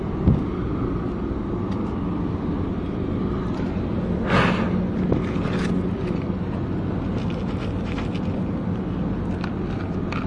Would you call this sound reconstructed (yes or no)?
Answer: no